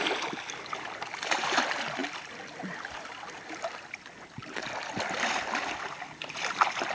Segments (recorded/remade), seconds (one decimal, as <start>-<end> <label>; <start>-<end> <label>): 0.0-6.9 recorded